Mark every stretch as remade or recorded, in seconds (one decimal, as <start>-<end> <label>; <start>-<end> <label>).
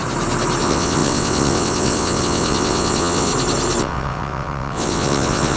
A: 0.0-0.6 recorded; 0.6-3.3 remade; 3.3-3.8 recorded; 3.8-5.6 remade